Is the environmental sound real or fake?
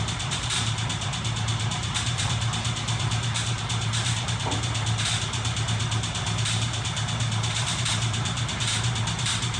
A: fake